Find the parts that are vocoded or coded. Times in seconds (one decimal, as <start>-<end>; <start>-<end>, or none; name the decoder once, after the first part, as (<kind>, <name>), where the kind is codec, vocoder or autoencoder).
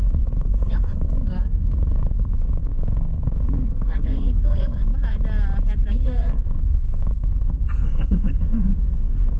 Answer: 0.0-4.9 (codec, SNAC); 5.9-9.4